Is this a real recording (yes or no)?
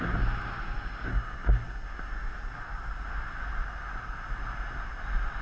yes